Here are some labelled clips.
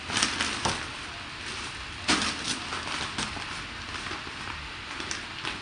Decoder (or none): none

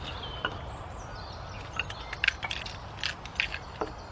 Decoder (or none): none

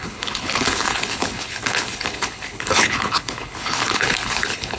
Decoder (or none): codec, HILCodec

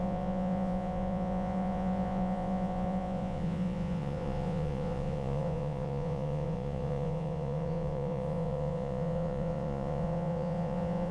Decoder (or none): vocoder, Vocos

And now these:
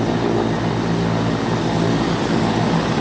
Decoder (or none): none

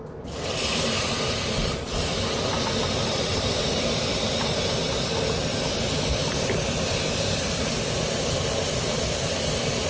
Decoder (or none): vocoder, BigVGAN v2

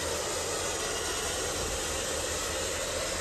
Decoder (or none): none